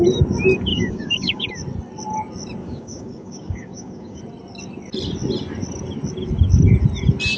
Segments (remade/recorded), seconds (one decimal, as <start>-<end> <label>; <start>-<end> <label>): 0.0-0.7 recorded; 0.7-1.5 remade; 1.5-2.6 recorded; 2.6-4.2 remade; 4.2-7.4 recorded